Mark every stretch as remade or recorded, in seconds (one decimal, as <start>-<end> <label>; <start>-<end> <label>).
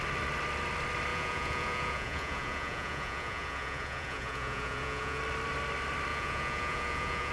0.0-1.1 recorded; 1.1-5.2 remade; 5.2-6.1 recorded; 6.1-7.3 remade